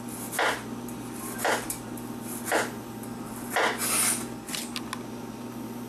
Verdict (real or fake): real